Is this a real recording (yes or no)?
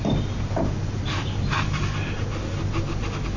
yes